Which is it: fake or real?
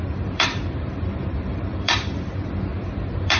fake